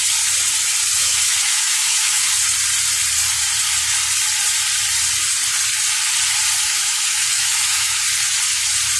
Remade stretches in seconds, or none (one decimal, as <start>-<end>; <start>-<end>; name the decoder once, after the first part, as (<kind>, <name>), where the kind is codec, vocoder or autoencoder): 1.0-2.3 (autoencoder, DAC-VAE); 6.6-8.0